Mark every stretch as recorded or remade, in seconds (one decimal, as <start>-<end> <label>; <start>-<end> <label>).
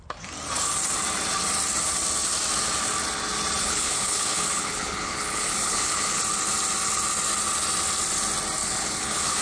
0.0-3.6 recorded; 3.6-6.2 remade; 6.2-8.6 recorded; 8.6-9.4 remade